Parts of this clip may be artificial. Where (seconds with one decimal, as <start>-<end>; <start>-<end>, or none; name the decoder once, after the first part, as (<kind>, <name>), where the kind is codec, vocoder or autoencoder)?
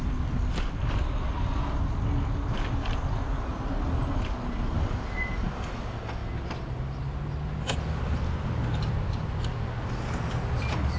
none